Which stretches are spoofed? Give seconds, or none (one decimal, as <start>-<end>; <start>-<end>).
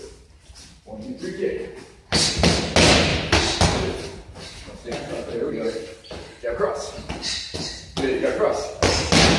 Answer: none